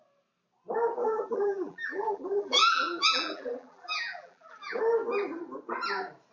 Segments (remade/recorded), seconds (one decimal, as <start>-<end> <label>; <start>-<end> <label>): 0.0-1.0 recorded; 1.0-4.8 remade; 4.8-6.3 recorded